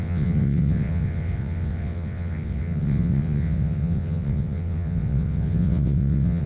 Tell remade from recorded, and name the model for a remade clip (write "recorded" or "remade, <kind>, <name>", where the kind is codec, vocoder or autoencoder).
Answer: remade, vocoder, WaveNeXt